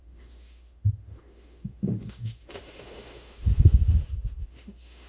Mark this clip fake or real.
fake